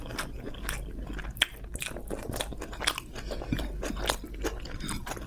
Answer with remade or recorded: recorded